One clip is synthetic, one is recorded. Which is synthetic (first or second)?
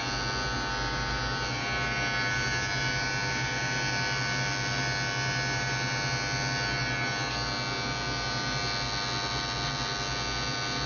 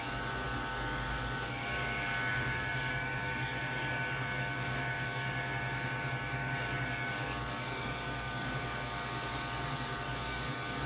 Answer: second